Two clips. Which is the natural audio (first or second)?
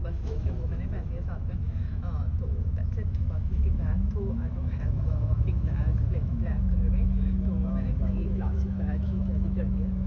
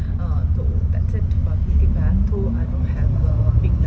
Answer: second